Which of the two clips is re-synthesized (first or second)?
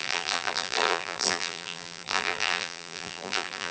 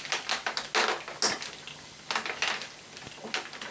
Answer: first